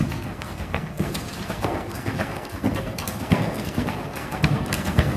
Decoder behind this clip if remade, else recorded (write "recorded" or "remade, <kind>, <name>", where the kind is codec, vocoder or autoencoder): remade, codec, SNAC